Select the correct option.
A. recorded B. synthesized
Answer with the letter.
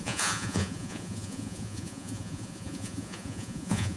B